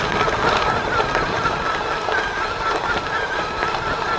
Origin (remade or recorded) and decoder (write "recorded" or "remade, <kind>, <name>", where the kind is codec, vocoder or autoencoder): recorded